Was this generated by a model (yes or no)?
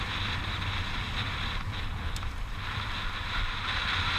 no